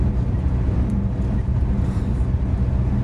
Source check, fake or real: real